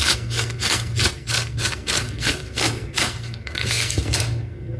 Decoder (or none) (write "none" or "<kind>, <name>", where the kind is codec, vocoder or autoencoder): codec, SNAC